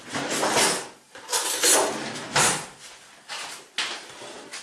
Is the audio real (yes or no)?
yes